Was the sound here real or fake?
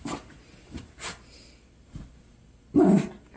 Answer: real